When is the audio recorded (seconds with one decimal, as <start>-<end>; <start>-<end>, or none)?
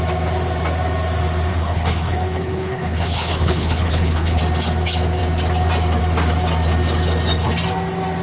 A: 0.0-1.5; 4.4-8.2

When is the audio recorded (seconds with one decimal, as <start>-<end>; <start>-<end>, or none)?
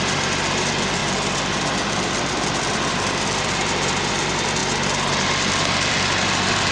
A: 4.6-5.2